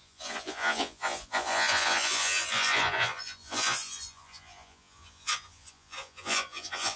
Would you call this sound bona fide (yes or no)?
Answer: no